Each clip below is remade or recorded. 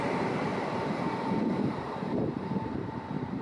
remade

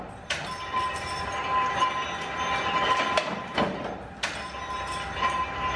recorded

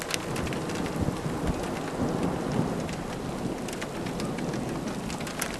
recorded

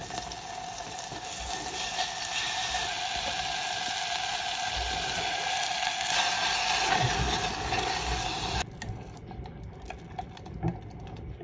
recorded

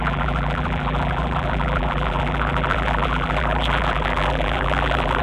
remade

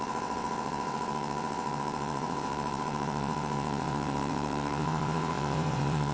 remade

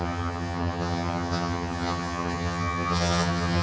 remade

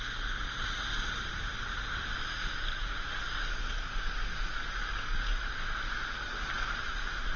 recorded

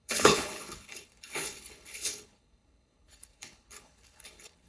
remade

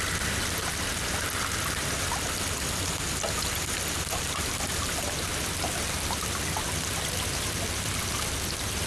recorded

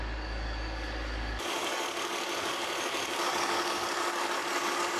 remade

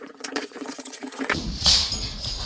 remade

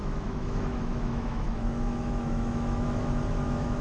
remade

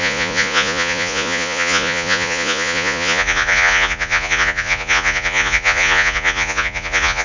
remade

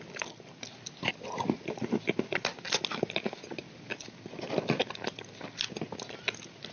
recorded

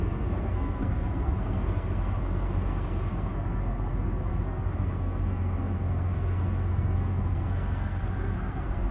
remade